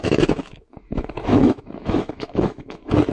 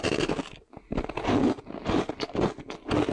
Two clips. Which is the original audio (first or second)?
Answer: second